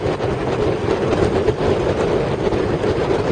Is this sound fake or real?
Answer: real